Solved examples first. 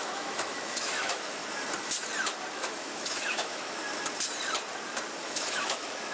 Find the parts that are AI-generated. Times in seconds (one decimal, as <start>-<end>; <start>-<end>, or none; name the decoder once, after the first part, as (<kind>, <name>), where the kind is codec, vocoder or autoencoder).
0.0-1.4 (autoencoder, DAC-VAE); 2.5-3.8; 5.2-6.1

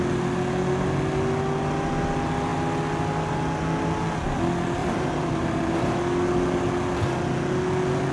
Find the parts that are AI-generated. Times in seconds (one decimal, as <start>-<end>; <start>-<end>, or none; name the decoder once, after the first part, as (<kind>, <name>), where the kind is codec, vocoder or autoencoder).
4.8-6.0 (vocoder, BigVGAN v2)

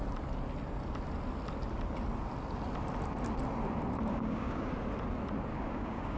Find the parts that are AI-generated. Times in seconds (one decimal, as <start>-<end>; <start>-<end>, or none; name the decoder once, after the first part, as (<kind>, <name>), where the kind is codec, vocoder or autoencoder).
4.1-4.7 (codec, DAC); 5.5-6.2

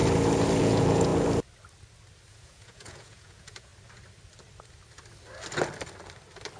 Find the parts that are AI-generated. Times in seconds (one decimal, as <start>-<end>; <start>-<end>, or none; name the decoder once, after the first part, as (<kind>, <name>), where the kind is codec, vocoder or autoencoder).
0.6-1.1 (vocoder, Vocos); 2.3-3.7